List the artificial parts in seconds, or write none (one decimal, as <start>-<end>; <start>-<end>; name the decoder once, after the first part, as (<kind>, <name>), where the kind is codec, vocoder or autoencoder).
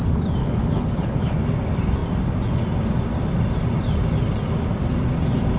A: 0.4-1.4 (codec, HILCodec)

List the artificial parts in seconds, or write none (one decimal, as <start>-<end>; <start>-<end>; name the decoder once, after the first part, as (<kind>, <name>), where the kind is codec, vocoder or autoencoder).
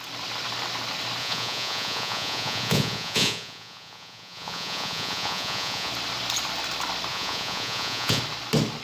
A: 1.2-5.9 (vocoder, Vocos); 7.1-8.2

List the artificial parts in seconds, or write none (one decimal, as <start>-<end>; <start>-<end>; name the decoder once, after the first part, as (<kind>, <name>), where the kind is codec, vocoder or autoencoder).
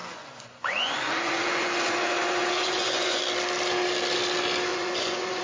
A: 0.0-3.2 (vocoder, Vocos); 4.7-5.4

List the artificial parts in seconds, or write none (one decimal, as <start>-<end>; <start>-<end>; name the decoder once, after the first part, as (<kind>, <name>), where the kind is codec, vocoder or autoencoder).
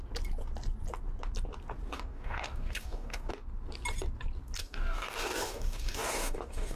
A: 1.9-3.3 (codec, DAC); 4.6-6.8